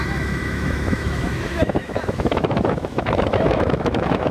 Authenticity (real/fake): fake